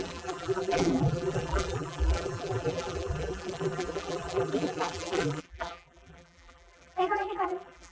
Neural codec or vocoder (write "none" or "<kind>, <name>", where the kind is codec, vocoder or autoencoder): vocoder, BigVGAN v2